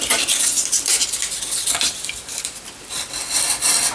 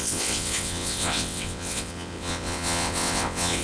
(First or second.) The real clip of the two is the first